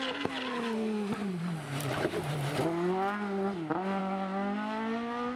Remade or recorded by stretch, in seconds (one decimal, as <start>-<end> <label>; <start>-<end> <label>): 0.0-1.2 recorded; 1.2-2.3 remade; 2.3-5.4 recorded